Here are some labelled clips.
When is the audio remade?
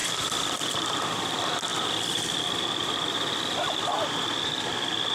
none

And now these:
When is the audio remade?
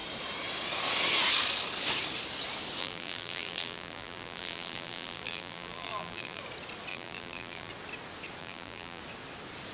2.8-6.4; 6.9-7.7; 8.4-9.0